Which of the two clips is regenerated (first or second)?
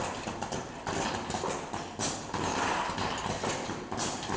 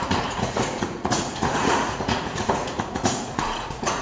second